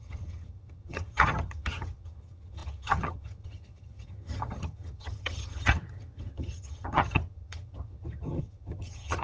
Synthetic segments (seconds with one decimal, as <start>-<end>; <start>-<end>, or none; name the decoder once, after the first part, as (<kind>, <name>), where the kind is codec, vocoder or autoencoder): 0.0-9.2 (vocoder, HiFi-GAN)